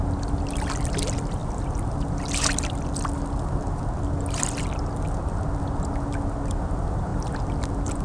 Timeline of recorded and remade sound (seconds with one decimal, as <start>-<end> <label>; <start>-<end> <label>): 0.0-8.0 recorded

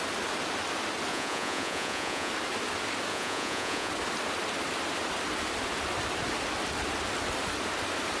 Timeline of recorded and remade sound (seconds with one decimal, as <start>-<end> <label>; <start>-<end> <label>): 0.0-1.1 recorded; 1.1-2.3 remade; 2.3-3.1 recorded; 3.1-3.9 remade; 3.9-8.2 recorded